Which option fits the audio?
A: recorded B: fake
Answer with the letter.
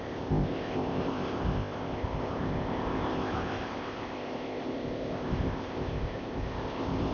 B